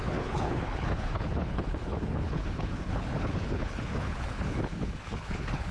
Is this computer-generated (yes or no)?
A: yes